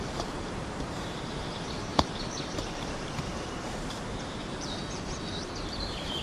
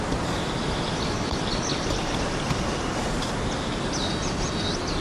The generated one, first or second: first